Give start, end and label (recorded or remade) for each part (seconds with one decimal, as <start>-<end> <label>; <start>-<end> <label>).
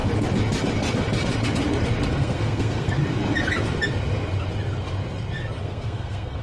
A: 0.0-2.1 recorded; 2.1-3.0 remade; 3.0-5.6 recorded; 5.6-6.4 remade